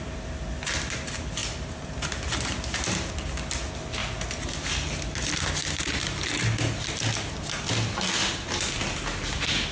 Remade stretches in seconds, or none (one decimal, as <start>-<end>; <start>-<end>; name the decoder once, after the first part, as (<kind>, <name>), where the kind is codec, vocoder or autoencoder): none